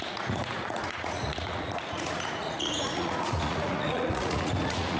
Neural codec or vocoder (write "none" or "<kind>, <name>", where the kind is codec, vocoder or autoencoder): vocoder, Vocos